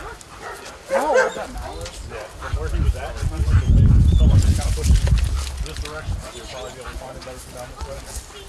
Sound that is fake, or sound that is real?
real